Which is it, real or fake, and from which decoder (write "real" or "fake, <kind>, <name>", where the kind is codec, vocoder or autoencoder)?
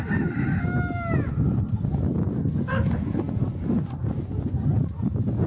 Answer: real